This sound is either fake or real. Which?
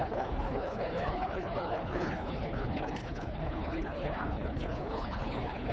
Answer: fake